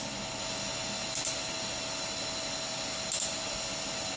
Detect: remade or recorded recorded